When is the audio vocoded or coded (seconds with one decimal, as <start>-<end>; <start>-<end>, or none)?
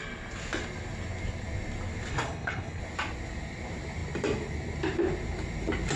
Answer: 2.1-2.8